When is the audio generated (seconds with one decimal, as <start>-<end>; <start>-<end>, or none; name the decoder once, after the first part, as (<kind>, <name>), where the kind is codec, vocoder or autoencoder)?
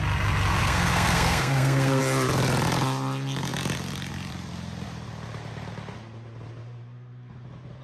0.6-2.0 (codec, SNAC)